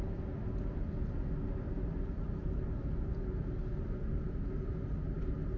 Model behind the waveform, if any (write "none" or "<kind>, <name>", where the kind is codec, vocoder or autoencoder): none